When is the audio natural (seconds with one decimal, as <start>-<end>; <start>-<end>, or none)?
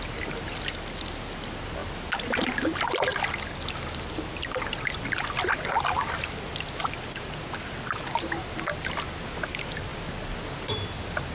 0.0-11.3